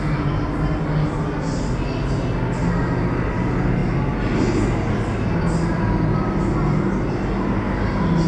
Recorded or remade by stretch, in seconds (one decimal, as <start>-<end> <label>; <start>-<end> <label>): 0.0-8.3 recorded